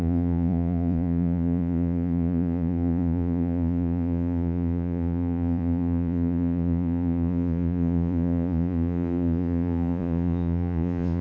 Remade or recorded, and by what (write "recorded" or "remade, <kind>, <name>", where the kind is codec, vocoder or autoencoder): remade, vocoder, Vocos